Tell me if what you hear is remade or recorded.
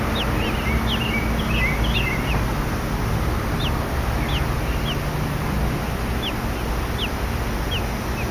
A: recorded